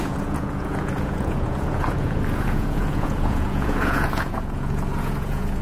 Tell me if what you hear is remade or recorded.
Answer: remade